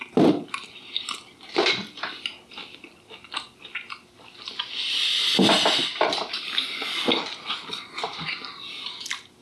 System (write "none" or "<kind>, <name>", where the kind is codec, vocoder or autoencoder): none